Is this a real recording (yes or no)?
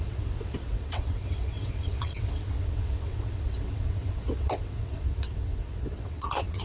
no